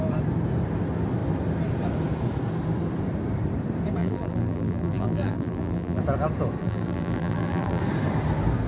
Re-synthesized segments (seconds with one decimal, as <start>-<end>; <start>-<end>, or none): 4.0-6.0; 6.6-7.8